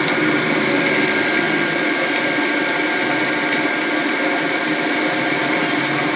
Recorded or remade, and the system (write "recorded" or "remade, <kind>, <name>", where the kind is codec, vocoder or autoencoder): recorded